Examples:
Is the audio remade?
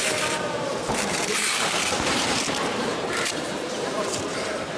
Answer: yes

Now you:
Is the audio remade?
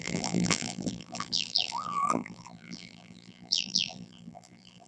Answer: yes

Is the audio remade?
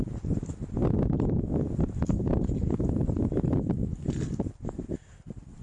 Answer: no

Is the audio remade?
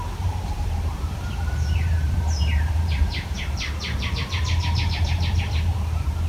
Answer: yes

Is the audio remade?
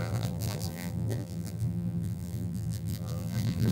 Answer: yes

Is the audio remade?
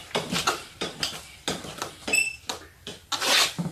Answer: no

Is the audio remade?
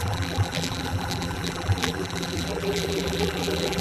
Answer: yes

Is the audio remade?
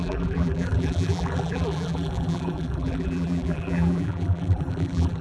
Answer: yes